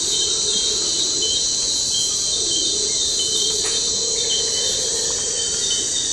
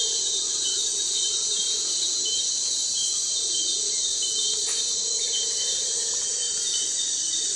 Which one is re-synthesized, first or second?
second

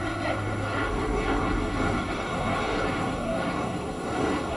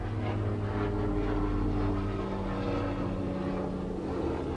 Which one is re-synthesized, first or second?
first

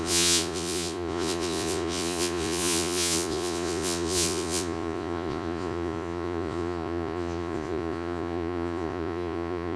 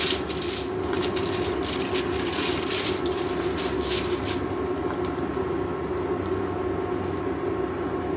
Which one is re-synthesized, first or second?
first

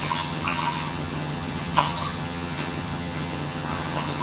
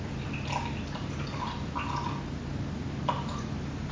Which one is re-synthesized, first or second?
first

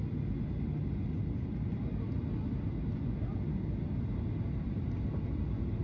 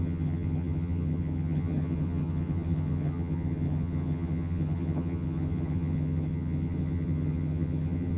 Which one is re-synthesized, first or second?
second